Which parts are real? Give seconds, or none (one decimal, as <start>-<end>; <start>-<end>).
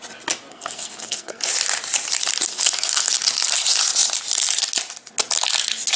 0.0-0.5; 1.5-2.5; 3.1-6.0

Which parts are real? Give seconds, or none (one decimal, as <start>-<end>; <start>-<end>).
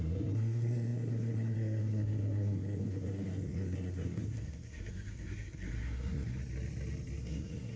6.4-7.2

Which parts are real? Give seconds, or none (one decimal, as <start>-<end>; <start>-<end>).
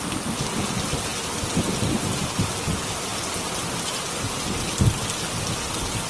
0.0-6.1